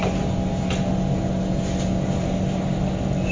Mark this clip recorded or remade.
recorded